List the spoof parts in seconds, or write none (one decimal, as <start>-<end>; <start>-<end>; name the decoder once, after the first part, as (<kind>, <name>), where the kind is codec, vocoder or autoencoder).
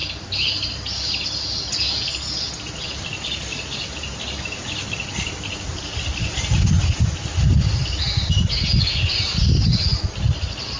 none